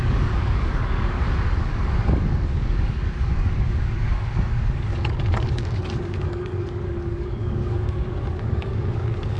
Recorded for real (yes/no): no